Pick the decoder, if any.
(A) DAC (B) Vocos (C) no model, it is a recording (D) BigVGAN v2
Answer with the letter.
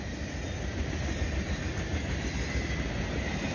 C